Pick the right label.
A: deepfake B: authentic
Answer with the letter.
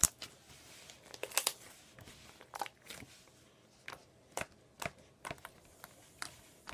B